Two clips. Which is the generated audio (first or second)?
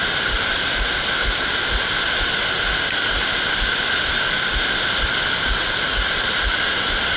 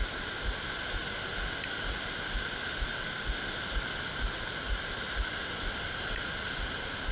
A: first